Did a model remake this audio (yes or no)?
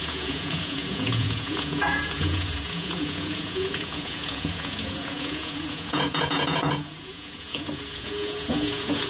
yes